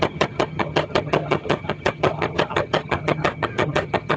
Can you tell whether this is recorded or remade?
remade